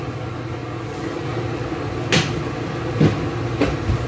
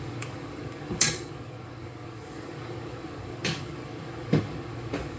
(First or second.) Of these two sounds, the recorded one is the first